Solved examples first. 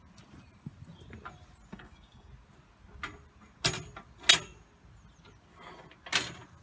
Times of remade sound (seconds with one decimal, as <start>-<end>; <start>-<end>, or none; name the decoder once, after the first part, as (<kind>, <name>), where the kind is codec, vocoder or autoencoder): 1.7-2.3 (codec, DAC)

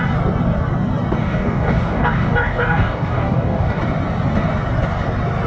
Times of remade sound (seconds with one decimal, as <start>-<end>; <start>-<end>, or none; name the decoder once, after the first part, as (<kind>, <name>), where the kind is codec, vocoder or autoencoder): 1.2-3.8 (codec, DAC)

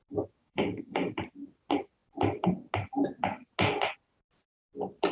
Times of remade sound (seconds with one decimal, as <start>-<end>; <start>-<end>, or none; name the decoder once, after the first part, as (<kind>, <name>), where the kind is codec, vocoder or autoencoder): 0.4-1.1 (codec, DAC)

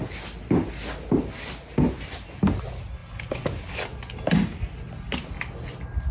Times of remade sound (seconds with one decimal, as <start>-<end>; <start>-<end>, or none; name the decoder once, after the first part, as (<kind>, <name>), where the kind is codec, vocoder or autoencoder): none